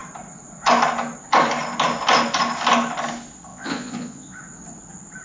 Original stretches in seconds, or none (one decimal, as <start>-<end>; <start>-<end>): 0.0-3.5; 4.4-5.2